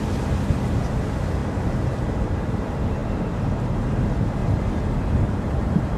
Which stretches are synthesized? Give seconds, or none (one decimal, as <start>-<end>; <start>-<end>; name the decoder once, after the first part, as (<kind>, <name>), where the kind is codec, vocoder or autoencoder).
0.0-1.4 (vocoder, BigVGAN v2); 2.0-4.4; 5.3-6.0